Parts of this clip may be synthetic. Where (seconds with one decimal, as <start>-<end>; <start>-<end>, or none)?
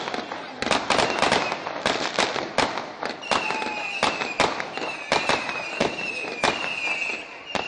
none